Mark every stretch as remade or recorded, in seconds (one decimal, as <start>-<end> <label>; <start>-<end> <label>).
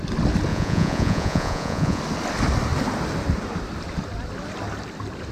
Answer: 0.0-0.5 recorded; 0.5-2.0 remade; 2.0-5.3 recorded